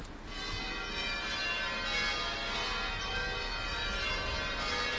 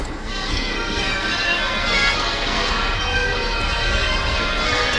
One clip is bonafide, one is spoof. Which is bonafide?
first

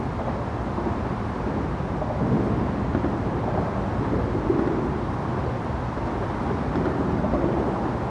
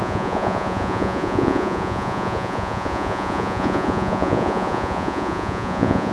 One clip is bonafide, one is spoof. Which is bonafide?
first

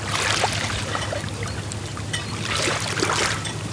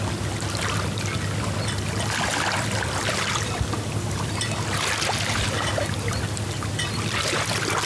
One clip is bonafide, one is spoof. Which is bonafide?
second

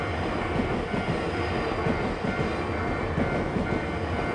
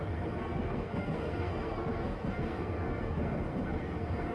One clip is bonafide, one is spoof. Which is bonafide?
first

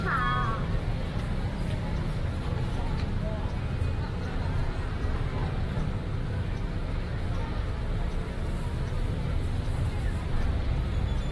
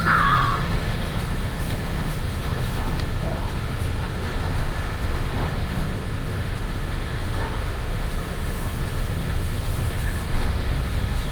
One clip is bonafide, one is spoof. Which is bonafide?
first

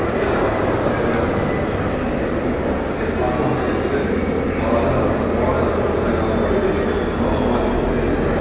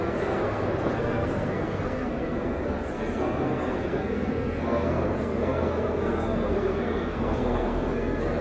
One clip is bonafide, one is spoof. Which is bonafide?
first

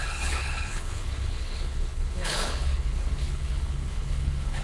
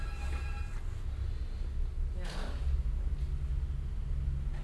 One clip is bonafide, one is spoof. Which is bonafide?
second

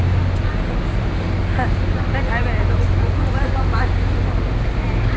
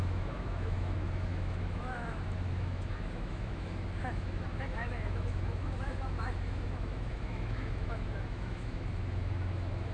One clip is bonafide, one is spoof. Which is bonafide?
first